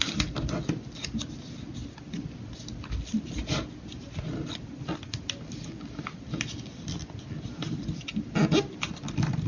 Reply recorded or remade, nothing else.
recorded